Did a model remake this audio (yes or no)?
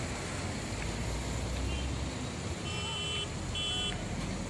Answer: no